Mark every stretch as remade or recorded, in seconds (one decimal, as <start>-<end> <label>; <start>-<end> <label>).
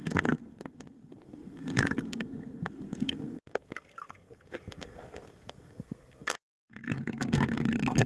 0.0-8.1 remade